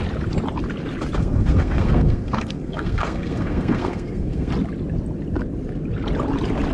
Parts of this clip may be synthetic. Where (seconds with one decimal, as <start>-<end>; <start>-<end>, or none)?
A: 1.2-4.5